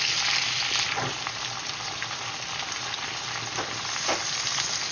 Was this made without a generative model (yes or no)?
yes